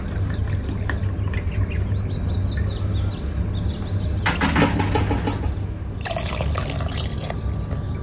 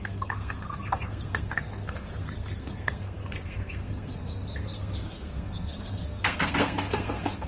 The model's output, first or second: second